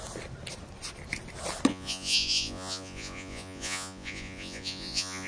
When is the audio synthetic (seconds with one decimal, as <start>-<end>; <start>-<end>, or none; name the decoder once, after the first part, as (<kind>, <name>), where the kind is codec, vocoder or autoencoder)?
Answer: 1.7-5.3 (vocoder, Vocos)